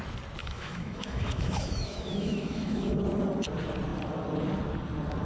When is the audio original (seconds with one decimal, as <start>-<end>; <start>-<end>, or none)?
0.0-0.4; 3.0-5.2